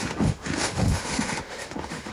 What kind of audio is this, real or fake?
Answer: fake